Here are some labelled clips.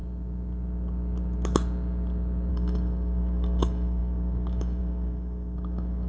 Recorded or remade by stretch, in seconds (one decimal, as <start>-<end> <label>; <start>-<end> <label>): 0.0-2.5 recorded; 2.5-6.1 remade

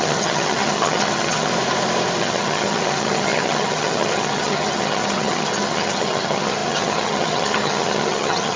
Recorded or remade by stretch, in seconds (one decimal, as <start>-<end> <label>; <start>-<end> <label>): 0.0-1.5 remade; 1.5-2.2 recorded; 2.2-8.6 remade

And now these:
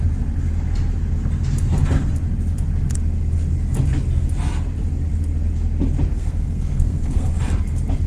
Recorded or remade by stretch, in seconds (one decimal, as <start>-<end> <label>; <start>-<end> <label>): 0.0-6.1 recorded; 6.1-7.4 remade; 7.4-8.1 recorded

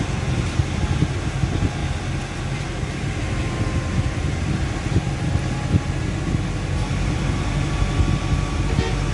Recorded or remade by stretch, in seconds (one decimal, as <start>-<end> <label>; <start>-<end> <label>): 0.0-1.8 recorded; 1.8-5.8 remade; 5.8-9.1 recorded

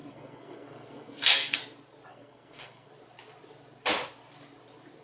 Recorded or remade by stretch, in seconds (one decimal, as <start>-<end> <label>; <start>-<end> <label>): 0.0-1.6 remade; 1.6-2.1 recorded; 2.1-2.9 remade; 2.9-5.0 recorded